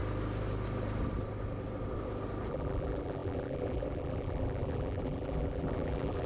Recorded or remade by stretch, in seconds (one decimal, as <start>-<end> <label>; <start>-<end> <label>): 0.0-2.5 recorded; 2.5-6.3 remade